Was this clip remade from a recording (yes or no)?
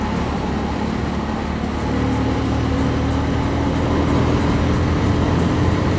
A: no